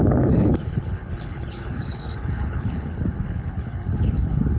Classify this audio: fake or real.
fake